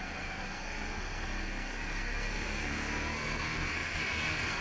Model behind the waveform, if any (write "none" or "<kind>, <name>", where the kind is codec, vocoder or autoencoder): codec, SNAC